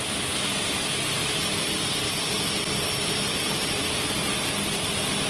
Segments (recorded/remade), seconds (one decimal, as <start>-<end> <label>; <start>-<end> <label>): 0.0-5.3 recorded

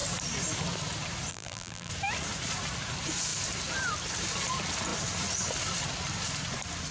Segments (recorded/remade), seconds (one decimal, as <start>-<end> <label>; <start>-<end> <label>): 0.0-1.3 recorded; 1.3-1.9 remade; 1.9-6.9 recorded

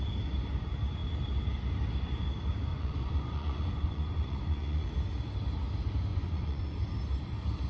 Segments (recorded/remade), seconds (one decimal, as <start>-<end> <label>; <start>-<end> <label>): 0.0-2.7 recorded; 2.7-4.9 remade; 4.9-6.1 recorded; 6.1-6.8 remade; 6.8-7.7 recorded